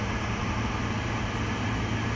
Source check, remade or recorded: recorded